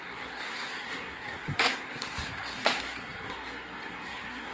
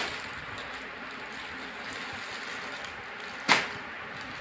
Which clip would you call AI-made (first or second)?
first